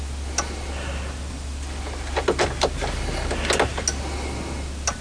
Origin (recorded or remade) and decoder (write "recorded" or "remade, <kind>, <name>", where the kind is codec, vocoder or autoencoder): recorded